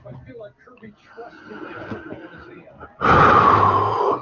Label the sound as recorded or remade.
recorded